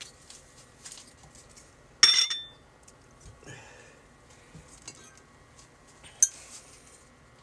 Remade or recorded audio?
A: recorded